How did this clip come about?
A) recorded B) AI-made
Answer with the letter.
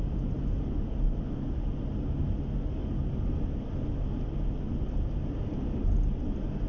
A